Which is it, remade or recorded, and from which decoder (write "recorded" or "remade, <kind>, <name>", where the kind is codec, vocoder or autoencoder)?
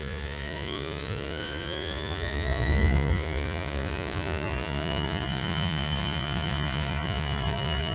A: remade, vocoder, Vocos